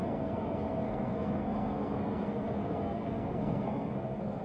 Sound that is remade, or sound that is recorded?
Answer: remade